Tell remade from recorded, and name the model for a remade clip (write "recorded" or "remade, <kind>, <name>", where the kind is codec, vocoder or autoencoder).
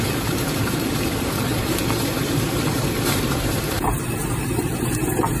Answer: remade, vocoder, BigVGAN v2